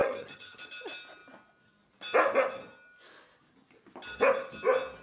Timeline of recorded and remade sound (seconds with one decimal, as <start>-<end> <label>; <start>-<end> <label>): 0.0-0.6 remade; 0.6-5.0 recorded